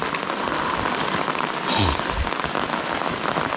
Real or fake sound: real